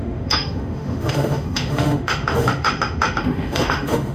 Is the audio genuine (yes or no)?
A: no